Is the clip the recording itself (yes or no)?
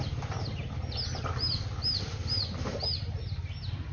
yes